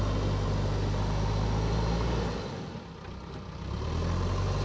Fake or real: real